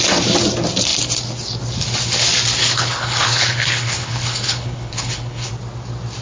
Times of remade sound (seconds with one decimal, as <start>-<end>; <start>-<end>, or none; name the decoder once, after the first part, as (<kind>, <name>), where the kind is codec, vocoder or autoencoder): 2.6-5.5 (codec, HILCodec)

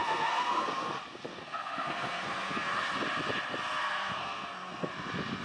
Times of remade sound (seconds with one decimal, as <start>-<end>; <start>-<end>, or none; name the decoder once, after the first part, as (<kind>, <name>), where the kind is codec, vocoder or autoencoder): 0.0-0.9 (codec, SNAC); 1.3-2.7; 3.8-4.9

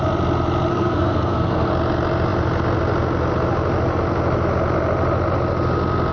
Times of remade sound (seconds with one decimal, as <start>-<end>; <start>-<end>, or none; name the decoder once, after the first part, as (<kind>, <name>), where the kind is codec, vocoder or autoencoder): 0.7-1.7 (codec, SNAC)